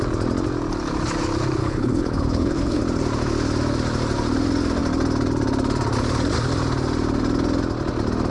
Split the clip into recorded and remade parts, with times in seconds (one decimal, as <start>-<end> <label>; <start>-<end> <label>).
0.0-1.6 recorded; 1.6-2.8 remade; 2.8-8.3 recorded